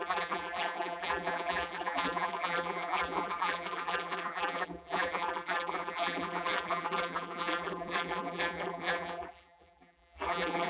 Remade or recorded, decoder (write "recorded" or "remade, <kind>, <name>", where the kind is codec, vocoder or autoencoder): remade, vocoder, BigVGAN v2